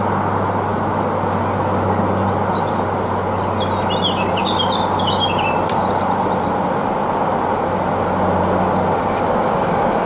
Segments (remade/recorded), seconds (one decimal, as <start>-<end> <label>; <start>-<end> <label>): 0.0-10.1 recorded